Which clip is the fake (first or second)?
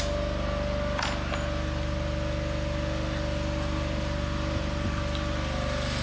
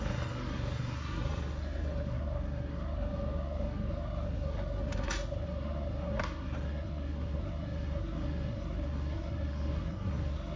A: second